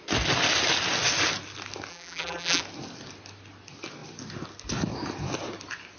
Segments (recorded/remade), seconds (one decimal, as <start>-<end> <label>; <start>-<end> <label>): 0.0-1.9 recorded; 1.9-2.6 remade; 2.6-6.0 recorded

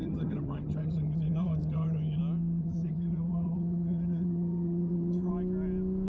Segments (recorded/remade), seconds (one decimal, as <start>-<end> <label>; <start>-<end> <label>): 0.0-2.2 remade; 2.2-2.6 recorded; 2.6-5.3 remade; 5.3-6.1 recorded

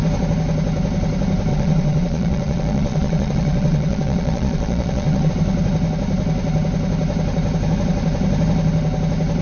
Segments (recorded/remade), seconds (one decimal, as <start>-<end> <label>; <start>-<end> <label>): 0.0-1.5 recorded; 1.5-5.3 remade; 5.3-9.4 recorded

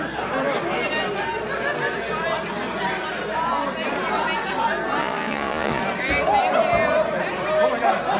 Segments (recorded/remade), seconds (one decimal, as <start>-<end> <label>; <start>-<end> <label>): 0.0-5.0 recorded; 5.0-5.8 remade; 5.8-8.2 recorded

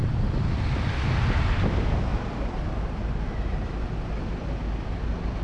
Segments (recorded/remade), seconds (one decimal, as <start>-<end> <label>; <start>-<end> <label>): 0.0-0.9 remade; 0.9-2.1 recorded; 2.1-3.2 remade; 3.2-5.4 recorded

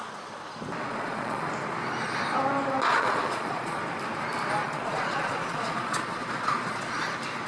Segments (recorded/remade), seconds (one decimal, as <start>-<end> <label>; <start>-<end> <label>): 0.0-0.9 recorded; 0.9-1.5 remade; 1.5-2.9 recorded; 2.9-3.8 remade; 3.8-4.6 recorded; 4.6-7.0 remade; 7.0-7.5 recorded